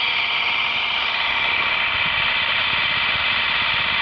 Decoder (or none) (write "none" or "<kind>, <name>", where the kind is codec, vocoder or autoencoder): none